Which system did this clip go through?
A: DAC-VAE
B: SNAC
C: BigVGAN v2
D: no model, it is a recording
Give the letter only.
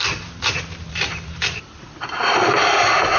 C